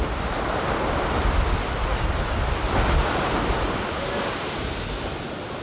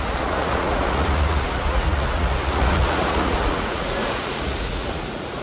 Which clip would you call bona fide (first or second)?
first